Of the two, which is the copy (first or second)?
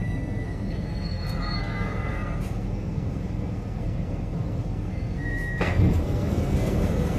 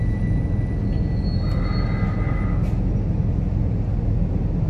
first